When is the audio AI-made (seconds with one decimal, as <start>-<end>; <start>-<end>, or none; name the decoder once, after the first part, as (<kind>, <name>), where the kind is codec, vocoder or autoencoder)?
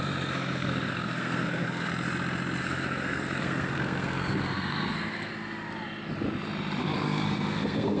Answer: 0.0-1.9 (codec, SNAC); 2.6-5.3; 6.8-8.0